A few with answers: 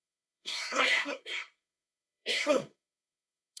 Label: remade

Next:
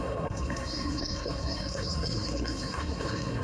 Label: remade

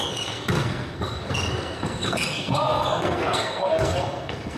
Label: remade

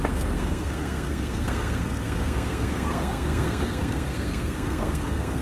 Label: remade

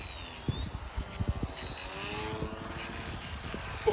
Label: recorded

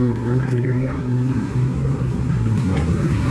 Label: remade